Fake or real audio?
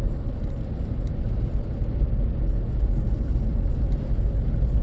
real